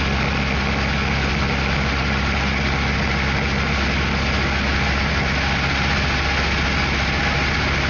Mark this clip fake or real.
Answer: real